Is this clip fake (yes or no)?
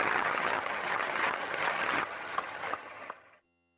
yes